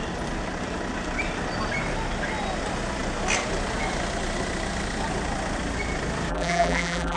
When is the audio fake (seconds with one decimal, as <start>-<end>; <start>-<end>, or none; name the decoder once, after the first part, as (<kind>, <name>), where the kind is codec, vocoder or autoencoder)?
6.3-7.2 (vocoder, BigVGAN v2)